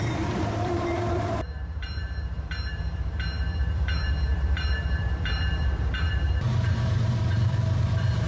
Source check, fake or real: fake